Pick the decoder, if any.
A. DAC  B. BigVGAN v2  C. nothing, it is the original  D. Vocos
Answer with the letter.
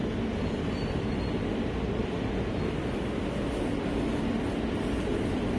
C